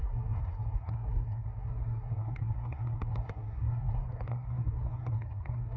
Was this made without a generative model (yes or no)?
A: no